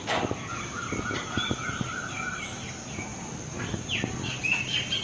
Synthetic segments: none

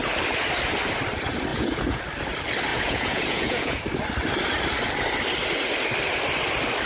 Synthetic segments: 1.5-2.0 (vocoder, Vocos); 2.7-3.8

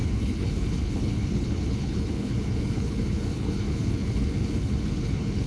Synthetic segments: 0.0-5.5 (codec, HILCodec)

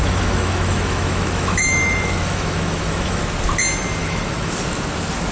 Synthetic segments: 0.0-3.2 (autoencoder, DAC-VAE); 4.0-4.5

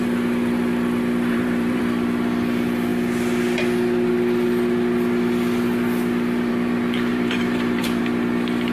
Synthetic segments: 1.3-1.8 (vocoder, BigVGAN v2); 7.1-8.0

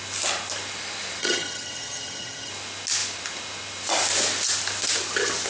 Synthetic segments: 1.2-2.5 (vocoder, HiFi-GAN)

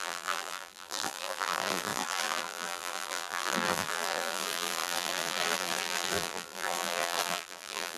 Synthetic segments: 0.0-8.0 (vocoder, BigVGAN v2)

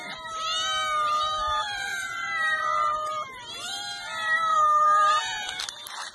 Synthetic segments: 1.9-2.6 (vocoder, BigVGAN v2); 4.5-5.1